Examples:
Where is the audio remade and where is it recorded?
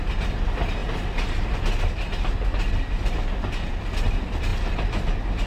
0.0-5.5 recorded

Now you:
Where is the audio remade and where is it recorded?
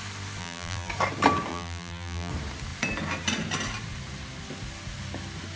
0.0-0.4 recorded; 0.4-0.9 remade; 0.9-1.5 recorded; 1.5-2.3 remade; 2.3-5.6 recorded